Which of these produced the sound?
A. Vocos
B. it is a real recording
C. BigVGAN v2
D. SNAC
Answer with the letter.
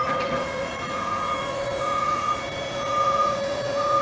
A